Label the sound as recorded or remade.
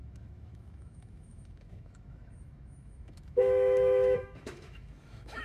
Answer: remade